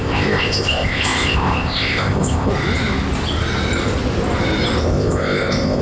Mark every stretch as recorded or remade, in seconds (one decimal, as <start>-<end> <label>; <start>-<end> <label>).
0.0-2.5 remade; 2.5-4.8 recorded; 4.8-5.8 remade